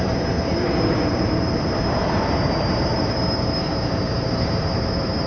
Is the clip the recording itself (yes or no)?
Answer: no